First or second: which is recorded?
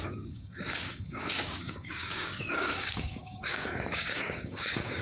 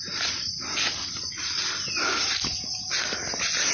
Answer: second